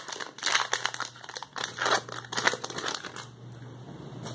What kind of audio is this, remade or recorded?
recorded